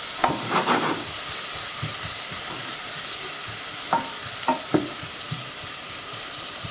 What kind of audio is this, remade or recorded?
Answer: remade